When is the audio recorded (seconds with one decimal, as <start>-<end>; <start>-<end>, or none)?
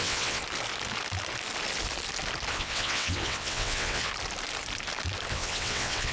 0.4-2.5; 4.1-5.3